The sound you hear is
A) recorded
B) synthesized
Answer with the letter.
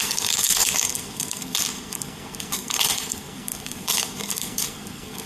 B